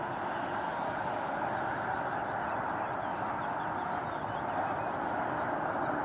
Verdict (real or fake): real